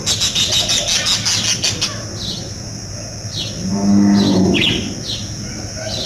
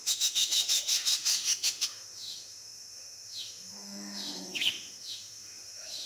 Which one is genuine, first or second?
first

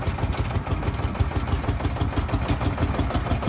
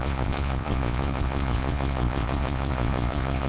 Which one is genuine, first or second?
first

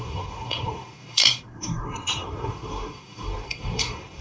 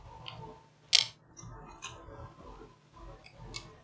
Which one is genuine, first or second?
second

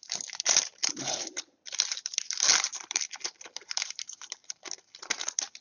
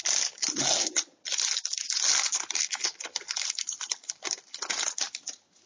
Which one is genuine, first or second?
second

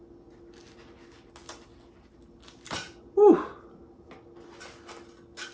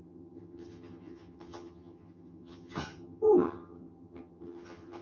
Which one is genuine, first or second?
first